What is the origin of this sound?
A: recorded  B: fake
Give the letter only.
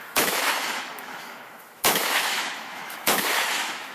B